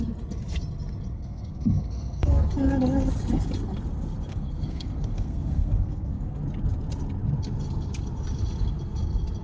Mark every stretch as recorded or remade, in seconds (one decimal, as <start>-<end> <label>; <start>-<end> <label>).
0.0-1.1 recorded; 1.1-2.5 remade; 2.5-4.3 recorded; 4.3-6.4 remade; 6.4-9.4 recorded